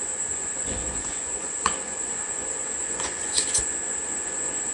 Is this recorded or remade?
remade